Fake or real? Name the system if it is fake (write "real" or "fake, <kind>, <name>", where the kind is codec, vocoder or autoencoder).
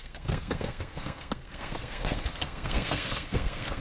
fake, codec, SNAC